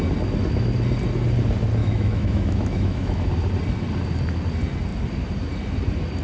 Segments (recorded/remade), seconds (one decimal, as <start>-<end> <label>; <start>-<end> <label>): 0.0-1.8 recorded; 1.8-3.3 remade; 3.3-6.2 recorded